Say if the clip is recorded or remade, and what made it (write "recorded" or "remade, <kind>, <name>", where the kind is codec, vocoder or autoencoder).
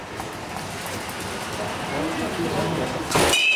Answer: recorded